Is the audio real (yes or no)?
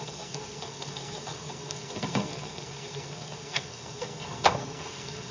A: no